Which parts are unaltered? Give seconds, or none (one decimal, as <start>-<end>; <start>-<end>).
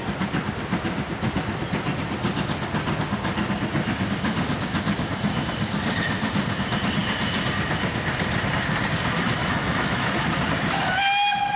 0.0-9.4; 10.1-11.6